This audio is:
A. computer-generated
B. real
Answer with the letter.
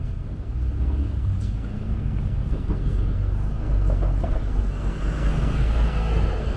A